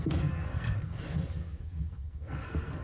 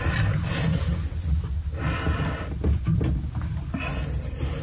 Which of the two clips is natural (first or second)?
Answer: second